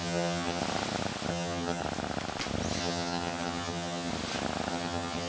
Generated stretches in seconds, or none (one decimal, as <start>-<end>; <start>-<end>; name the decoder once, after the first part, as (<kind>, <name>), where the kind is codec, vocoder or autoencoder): 0.0-0.6 (vocoder, HiFi-GAN); 1.3-1.8; 2.8-4.1; 4.7-5.3